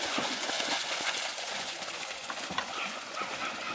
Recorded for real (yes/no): no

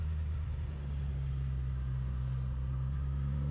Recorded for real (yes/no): yes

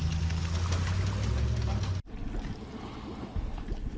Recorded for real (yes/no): yes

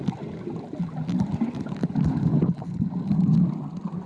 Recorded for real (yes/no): yes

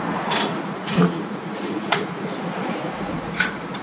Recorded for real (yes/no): no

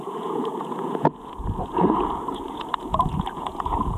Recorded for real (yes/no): no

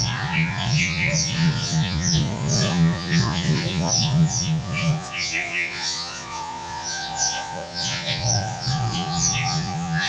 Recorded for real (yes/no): no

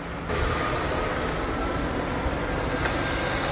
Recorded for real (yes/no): yes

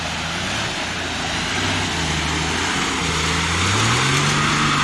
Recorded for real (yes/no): yes